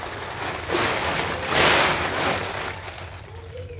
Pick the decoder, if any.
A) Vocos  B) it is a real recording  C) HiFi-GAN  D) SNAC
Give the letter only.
B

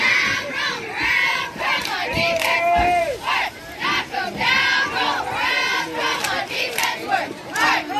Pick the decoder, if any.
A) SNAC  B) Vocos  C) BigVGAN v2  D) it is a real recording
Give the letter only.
C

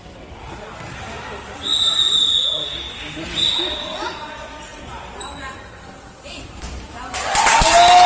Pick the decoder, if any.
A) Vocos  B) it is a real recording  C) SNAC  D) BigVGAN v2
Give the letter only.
B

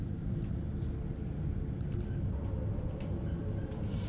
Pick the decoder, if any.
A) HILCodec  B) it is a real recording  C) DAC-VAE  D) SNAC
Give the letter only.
B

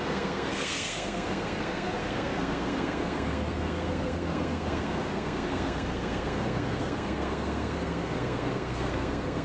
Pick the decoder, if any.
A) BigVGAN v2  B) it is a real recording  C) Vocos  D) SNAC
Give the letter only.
D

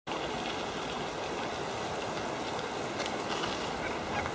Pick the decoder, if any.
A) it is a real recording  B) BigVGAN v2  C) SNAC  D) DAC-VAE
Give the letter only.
A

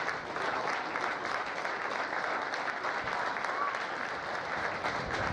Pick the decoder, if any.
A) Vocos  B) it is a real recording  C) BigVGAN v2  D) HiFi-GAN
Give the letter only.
B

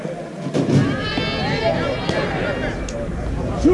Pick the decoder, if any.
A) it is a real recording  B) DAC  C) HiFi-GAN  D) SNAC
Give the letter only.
A